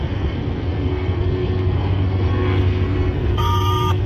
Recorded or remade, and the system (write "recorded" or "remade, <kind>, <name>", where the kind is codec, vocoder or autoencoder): remade, codec, SNAC